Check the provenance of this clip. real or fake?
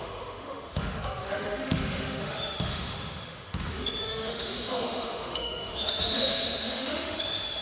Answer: fake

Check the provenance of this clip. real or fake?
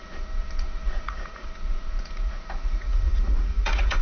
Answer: fake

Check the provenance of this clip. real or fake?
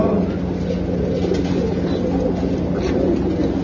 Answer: real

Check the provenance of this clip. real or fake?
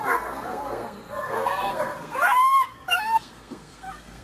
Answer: fake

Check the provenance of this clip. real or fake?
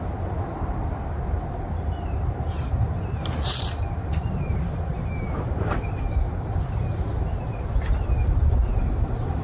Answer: fake